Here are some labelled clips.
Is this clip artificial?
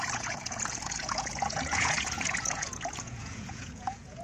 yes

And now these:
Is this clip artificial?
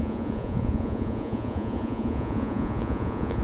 yes